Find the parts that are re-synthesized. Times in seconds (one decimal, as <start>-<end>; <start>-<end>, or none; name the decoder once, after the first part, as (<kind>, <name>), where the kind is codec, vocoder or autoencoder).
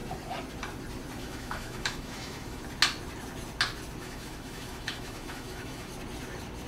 1.2-2.6 (autoencoder, DAC-VAE); 4.0-5.9